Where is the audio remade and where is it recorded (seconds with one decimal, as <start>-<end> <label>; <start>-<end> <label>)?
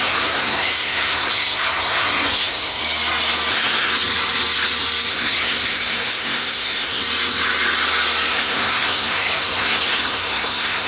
0.0-2.8 remade; 2.8-3.5 recorded; 3.5-3.9 remade; 3.9-5.1 recorded; 5.1-7.0 remade; 7.0-8.3 recorded; 8.3-10.9 remade